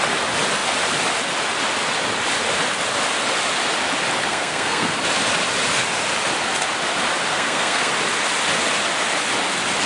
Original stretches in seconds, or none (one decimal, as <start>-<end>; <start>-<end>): 0.0-4.3; 4.9-7.3; 7.9-9.9